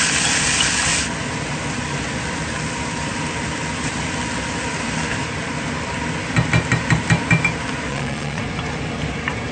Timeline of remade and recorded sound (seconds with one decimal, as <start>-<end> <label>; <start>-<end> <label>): 0.0-7.9 recorded; 7.9-8.4 remade; 8.4-9.5 recorded